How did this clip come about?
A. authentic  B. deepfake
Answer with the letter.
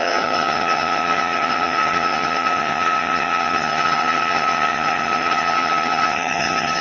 B